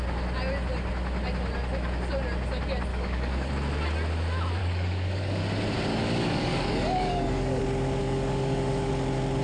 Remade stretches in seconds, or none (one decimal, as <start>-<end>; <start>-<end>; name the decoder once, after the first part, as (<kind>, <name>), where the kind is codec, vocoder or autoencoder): 2.9-3.5 (codec, DAC); 4.6-5.4; 5.9-7.6; 8.0-8.9